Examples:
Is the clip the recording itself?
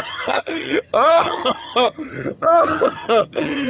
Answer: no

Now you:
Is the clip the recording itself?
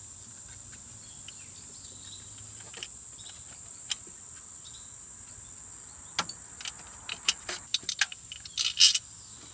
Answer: yes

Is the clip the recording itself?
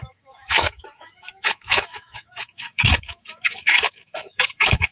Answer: no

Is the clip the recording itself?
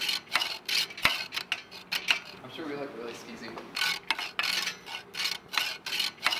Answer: yes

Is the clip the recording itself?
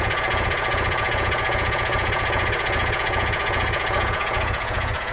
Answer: no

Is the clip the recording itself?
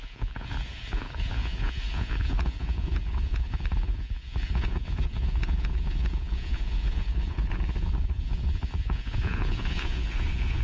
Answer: no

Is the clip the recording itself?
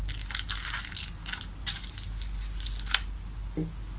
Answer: yes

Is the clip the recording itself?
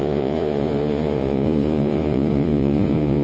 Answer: no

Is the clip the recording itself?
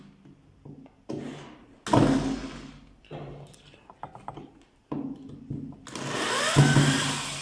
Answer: yes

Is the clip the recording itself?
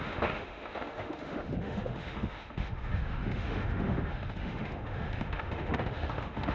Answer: no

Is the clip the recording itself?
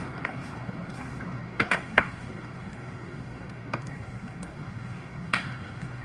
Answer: no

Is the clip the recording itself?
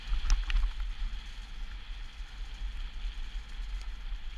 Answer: yes